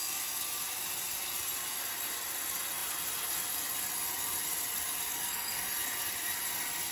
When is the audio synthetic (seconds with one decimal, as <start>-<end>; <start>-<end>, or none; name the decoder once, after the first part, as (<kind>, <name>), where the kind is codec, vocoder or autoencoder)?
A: 5.1-5.7 (codec, SNAC)